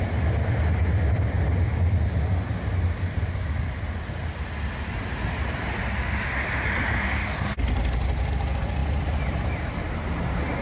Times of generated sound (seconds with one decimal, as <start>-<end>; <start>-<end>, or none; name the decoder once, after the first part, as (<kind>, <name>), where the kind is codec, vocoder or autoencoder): none